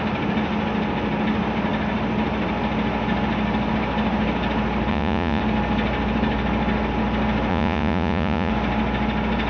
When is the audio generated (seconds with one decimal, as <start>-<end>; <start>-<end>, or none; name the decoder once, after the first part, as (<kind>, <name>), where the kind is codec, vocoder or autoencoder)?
4.9-5.4 (vocoder, Vocos); 7.5-8.5